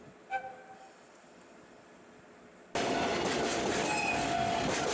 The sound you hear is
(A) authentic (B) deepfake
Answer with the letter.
A